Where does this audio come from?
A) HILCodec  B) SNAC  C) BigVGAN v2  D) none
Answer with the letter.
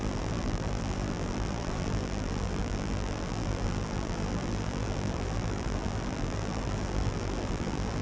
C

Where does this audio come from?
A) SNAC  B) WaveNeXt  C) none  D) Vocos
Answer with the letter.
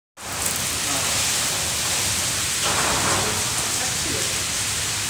C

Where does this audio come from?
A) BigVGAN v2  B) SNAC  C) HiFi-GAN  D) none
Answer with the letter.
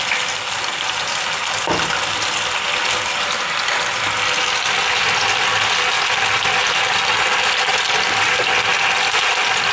D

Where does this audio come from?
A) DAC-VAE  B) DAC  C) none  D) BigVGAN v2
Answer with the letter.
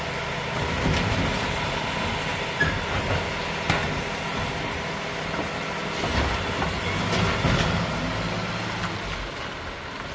C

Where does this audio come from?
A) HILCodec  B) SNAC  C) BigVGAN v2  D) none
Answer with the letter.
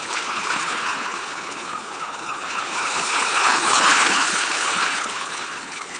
A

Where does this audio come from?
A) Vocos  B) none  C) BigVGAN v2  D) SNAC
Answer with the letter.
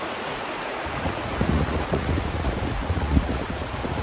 A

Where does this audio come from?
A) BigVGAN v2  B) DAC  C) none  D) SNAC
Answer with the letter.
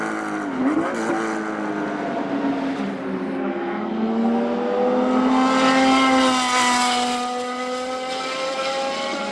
C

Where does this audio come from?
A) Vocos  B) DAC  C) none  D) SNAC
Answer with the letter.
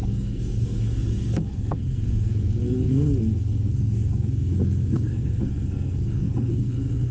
D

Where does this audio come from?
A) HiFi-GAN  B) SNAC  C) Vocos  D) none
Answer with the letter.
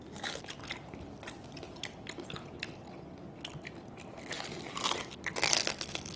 D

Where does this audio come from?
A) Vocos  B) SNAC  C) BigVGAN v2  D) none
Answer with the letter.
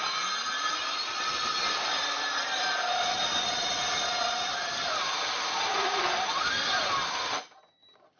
C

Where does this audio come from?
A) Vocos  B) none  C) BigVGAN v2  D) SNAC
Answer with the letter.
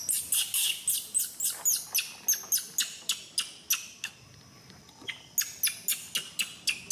B